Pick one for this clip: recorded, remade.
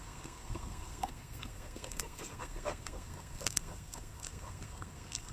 remade